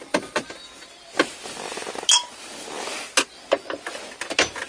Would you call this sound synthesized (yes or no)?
no